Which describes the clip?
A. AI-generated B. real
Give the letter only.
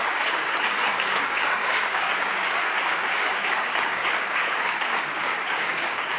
A